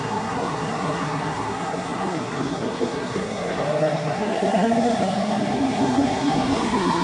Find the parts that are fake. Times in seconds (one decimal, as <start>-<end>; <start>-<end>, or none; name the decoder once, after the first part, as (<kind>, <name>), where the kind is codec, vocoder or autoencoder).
0.0-7.0 (codec, SNAC)